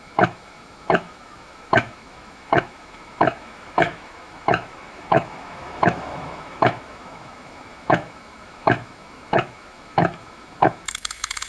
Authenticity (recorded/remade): remade